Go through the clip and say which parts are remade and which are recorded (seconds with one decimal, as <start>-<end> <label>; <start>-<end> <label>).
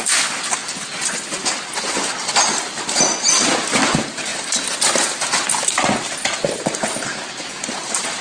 0.0-8.2 recorded